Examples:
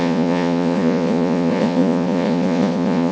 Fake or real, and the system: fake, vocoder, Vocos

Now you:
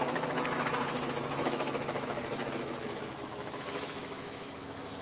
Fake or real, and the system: fake, autoencoder, DAC-VAE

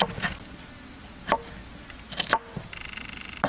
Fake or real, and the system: real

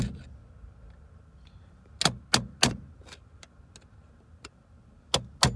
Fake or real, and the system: real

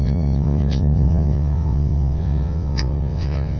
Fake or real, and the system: fake, vocoder, WaveNeXt